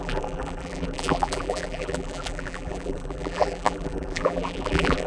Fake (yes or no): yes